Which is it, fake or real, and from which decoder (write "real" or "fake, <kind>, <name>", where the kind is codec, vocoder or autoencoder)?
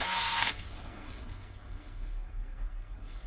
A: fake, codec, SNAC